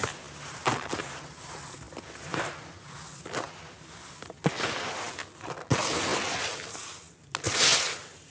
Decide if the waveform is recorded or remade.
recorded